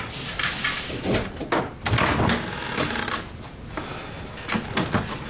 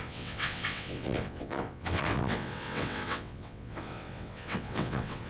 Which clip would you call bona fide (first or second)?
first